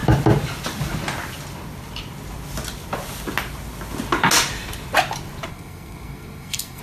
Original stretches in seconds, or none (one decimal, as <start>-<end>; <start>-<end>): 0.0-5.5